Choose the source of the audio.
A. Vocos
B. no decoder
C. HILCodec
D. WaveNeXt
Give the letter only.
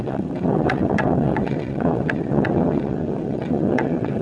D